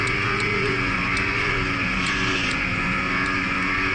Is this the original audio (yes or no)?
no